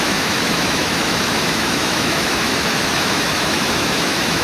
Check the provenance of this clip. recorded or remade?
remade